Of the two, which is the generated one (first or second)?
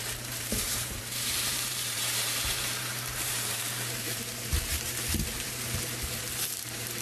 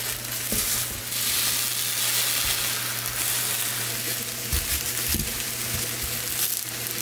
first